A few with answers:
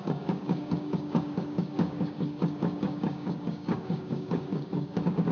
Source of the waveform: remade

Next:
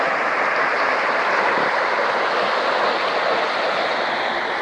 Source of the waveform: recorded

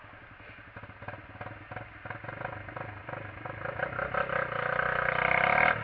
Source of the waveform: recorded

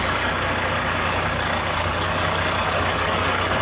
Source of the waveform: remade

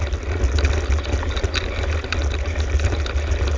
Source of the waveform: recorded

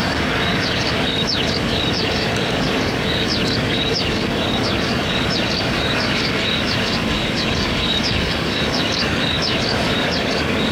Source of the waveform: remade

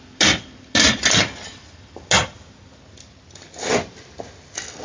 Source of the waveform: recorded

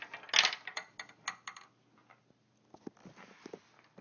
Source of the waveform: recorded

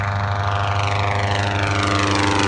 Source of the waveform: recorded